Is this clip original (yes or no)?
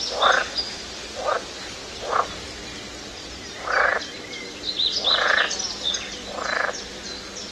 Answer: yes